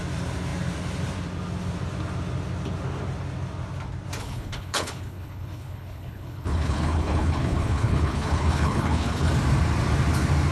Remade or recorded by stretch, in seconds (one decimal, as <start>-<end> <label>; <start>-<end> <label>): 0.0-4.2 recorded; 4.2-9.3 remade; 9.3-10.5 recorded